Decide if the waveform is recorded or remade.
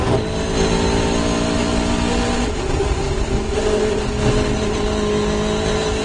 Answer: recorded